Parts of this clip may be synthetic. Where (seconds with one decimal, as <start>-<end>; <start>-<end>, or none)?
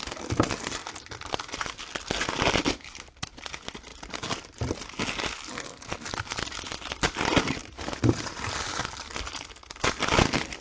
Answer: 7.6-8.8